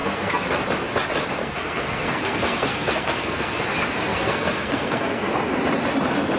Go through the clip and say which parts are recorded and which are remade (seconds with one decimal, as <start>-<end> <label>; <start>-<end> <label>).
0.0-0.5 remade; 0.5-1.4 recorded; 1.4-3.6 remade; 3.6-4.1 recorded; 4.1-5.3 remade; 5.3-6.4 recorded